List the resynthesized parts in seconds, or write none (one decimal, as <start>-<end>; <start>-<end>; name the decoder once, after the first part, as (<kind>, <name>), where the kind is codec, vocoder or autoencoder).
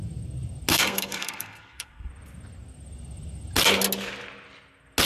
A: 0.7-2.1 (codec, SNAC)